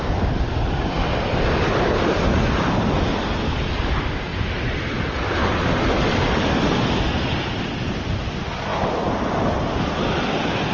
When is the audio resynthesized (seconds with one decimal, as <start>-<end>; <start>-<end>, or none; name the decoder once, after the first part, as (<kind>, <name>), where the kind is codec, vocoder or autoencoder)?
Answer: none